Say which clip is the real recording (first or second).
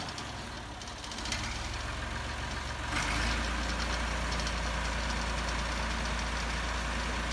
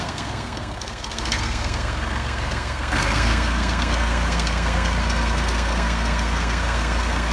first